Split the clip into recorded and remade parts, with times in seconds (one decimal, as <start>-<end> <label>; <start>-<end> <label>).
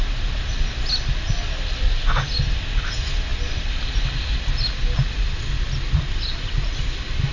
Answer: 0.0-7.3 recorded